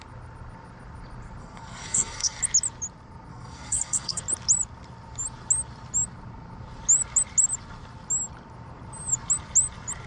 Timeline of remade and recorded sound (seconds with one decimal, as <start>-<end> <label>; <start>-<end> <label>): 0.0-1.4 recorded; 1.4-2.4 remade; 2.4-3.3 recorded; 3.3-4.2 remade; 4.2-10.1 recorded